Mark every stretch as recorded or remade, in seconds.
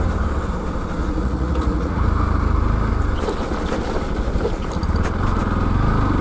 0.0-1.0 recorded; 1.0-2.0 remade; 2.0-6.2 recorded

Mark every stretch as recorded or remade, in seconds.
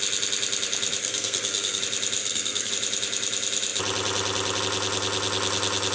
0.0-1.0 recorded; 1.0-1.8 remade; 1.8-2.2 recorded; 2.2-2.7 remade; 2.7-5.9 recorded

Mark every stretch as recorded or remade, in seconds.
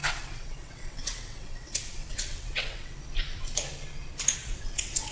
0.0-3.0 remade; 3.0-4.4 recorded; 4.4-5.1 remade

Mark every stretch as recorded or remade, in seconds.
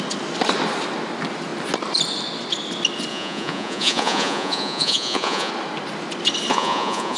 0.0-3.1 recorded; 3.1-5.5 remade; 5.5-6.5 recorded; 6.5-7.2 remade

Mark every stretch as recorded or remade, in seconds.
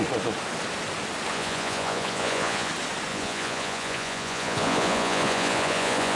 0.0-1.3 recorded; 1.3-2.7 remade; 2.7-3.1 recorded; 3.1-6.2 remade